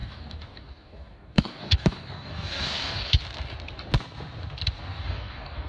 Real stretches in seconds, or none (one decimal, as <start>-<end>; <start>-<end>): 3.2-4.8